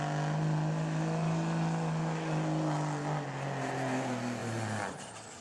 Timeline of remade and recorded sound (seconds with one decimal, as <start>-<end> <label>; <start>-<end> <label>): 0.0-5.4 recorded